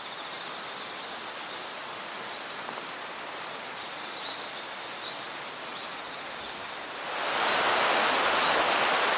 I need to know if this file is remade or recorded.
recorded